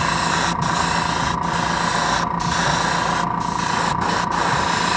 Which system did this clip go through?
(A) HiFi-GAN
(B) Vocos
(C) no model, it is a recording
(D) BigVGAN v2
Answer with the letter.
C